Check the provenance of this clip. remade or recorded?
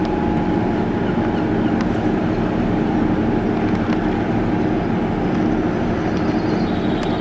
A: recorded